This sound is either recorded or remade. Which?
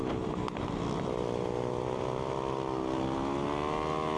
recorded